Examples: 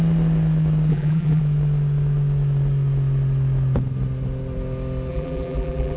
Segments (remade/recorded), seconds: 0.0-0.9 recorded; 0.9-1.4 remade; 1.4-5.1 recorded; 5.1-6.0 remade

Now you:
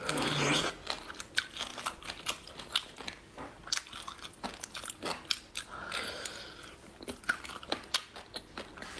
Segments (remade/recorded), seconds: 0.0-1.7 recorded; 1.7-3.8 remade; 3.8-9.0 recorded

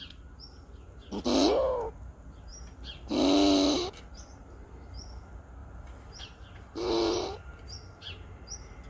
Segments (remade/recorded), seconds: 0.0-8.9 recorded

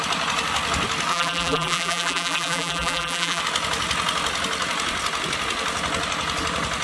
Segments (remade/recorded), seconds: 0.0-1.1 recorded; 1.1-3.4 remade; 3.4-6.8 recorded

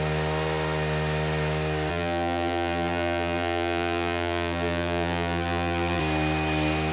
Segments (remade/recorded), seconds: 0.0-1.9 recorded; 1.9-6.0 remade; 6.0-6.9 recorded